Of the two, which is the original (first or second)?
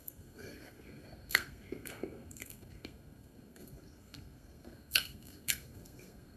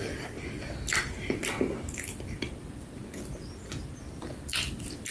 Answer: second